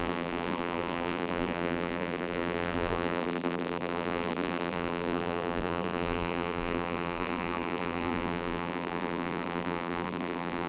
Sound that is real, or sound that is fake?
fake